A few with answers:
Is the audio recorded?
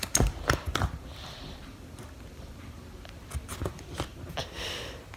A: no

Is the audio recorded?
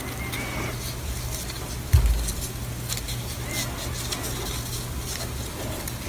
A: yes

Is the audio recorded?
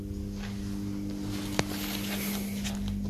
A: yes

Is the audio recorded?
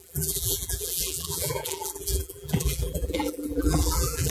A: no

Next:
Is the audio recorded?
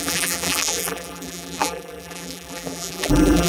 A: no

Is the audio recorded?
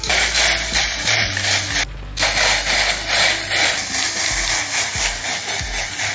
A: yes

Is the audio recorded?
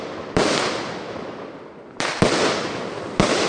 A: no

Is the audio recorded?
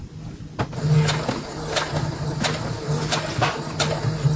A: yes